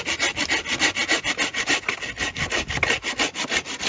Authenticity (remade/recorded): recorded